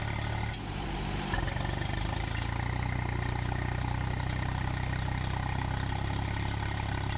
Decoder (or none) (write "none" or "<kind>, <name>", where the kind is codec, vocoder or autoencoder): none